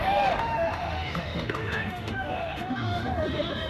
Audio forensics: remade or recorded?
remade